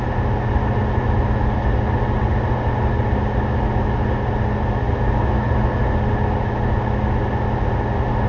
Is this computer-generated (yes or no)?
no